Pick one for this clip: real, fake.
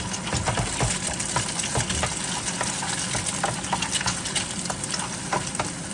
real